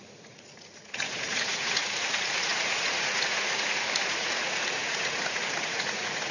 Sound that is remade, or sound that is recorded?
remade